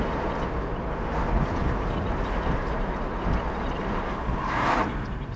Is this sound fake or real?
fake